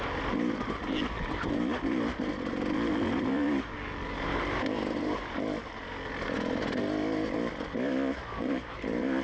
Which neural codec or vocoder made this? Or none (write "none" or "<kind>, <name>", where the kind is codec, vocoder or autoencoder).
none